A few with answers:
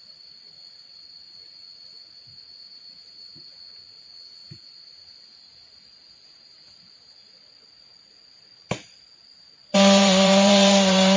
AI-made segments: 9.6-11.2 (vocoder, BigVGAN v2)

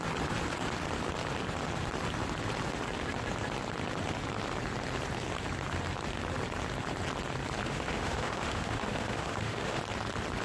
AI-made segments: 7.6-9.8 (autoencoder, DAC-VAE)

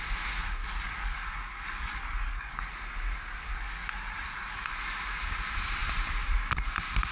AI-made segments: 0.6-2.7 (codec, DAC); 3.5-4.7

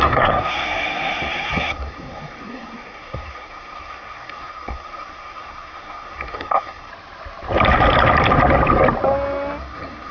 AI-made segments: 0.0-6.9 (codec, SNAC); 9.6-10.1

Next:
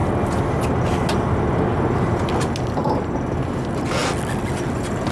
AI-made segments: none

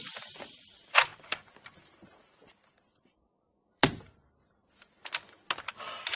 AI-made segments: 0.0-4.6 (vocoder, BigVGAN v2)